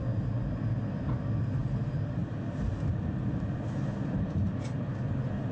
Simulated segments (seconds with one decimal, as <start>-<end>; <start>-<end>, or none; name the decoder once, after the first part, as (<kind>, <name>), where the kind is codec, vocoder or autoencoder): none